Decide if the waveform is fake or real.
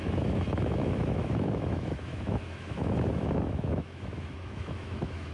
fake